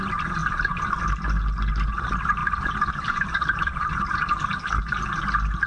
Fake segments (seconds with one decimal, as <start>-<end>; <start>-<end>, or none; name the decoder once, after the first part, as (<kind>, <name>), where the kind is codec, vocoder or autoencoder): 2.4-4.0 (vocoder, BigVGAN v2)